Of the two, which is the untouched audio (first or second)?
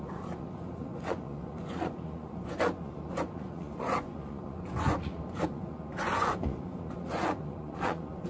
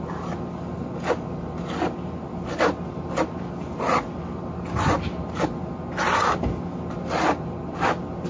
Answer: second